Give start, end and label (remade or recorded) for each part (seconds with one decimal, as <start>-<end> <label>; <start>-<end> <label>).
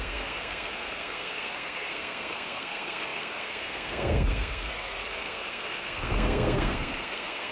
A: 0.0-7.5 remade